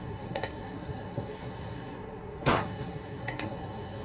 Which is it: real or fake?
fake